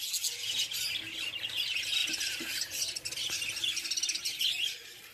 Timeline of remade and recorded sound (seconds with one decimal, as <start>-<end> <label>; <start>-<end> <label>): 0.0-5.1 recorded

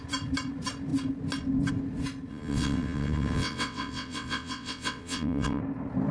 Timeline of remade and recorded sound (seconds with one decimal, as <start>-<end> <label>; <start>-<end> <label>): 0.0-2.3 recorded; 2.3-5.6 remade; 5.6-6.1 recorded